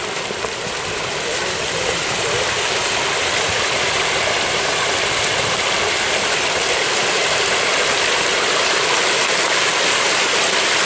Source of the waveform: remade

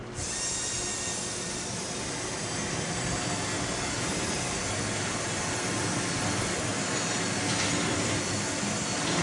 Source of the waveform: recorded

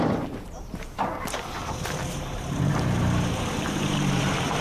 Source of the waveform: remade